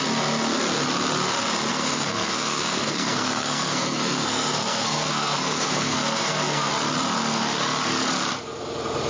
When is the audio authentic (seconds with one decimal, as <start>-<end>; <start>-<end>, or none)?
0.0-1.7; 6.7-9.1